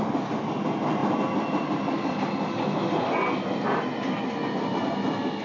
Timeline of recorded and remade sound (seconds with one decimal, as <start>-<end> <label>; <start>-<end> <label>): 0.0-5.4 recorded

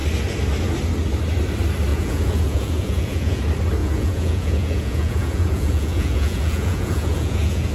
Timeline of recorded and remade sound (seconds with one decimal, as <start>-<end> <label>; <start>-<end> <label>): 0.0-1.9 recorded; 1.9-3.4 remade; 3.4-3.8 recorded; 3.8-7.7 remade